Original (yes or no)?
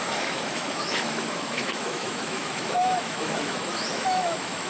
no